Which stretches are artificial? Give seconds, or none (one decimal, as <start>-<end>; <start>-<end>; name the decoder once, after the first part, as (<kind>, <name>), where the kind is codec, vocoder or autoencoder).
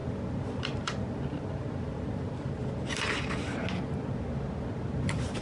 none